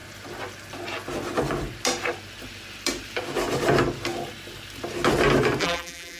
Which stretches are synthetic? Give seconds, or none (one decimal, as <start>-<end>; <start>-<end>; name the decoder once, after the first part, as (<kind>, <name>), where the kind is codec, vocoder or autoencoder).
5.6-6.2 (vocoder, BigVGAN v2)